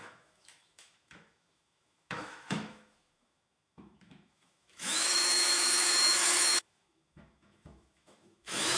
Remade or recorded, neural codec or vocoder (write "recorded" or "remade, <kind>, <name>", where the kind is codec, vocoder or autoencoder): remade, autoencoder, DAC-VAE